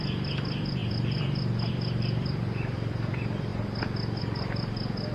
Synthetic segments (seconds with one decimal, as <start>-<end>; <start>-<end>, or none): 0.0-3.5; 4.2-5.1